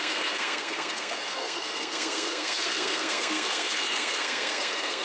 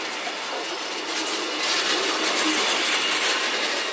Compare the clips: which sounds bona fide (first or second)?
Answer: second